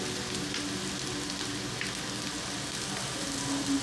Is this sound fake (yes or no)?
no